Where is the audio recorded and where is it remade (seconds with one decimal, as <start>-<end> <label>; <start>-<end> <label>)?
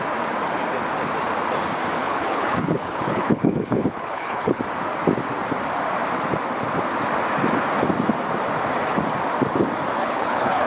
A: 0.0-2.0 recorded; 2.0-4.6 remade; 4.6-10.0 recorded; 10.0-10.7 remade